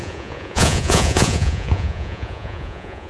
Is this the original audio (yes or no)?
no